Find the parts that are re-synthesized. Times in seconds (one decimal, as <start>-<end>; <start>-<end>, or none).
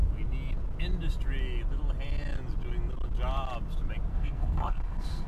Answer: 4.1-5.3